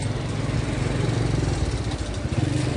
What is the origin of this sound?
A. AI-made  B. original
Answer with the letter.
B